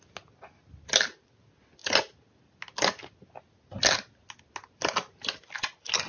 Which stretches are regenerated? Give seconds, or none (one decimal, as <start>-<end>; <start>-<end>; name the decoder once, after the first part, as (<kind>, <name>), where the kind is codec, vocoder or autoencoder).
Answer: none